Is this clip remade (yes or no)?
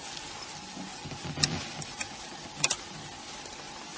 no